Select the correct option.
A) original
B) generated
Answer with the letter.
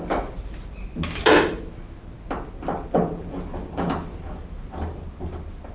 A